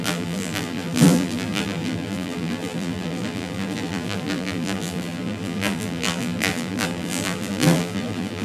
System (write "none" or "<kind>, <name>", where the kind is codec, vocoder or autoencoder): vocoder, BigVGAN v2